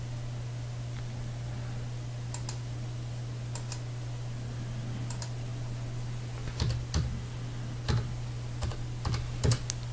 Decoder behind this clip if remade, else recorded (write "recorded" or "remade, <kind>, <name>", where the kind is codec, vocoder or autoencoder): recorded